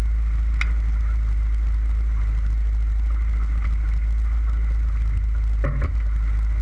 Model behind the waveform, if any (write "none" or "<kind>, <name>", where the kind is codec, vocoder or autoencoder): none